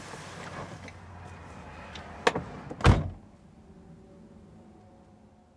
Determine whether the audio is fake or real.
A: real